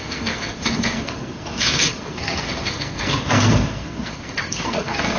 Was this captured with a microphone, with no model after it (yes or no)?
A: no